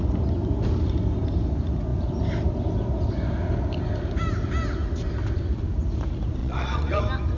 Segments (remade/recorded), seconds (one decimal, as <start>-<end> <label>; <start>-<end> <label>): 0.0-6.4 recorded; 6.4-7.0 remade; 7.0-7.4 recorded